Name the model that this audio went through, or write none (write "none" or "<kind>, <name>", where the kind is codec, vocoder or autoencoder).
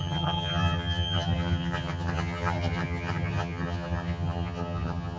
vocoder, HiFi-GAN